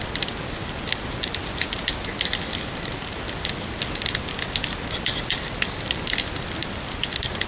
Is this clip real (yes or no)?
yes